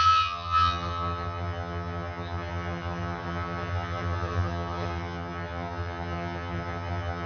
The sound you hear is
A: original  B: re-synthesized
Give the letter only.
B